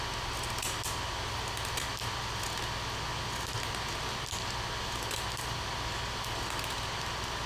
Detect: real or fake real